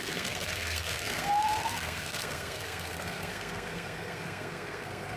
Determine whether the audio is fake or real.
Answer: fake